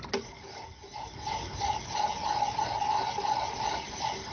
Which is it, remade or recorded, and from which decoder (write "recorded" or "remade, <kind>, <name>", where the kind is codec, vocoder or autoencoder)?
recorded